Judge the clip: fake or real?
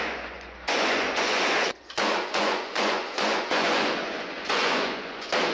fake